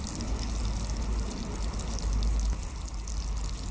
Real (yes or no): yes